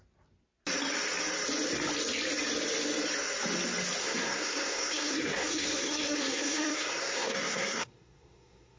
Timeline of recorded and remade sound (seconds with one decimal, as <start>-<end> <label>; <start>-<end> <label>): 0.0-4.0 recorded; 4.0-8.8 remade